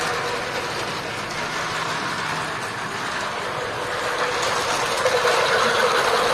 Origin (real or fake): real